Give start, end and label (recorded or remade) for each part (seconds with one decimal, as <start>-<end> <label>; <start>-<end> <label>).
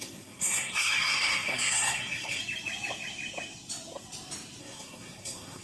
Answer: 0.0-2.4 remade; 2.4-4.6 recorded; 4.6-5.6 remade